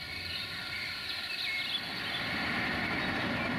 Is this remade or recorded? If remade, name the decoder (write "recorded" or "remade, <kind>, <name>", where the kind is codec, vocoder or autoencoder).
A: recorded